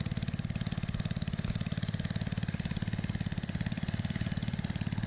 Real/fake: fake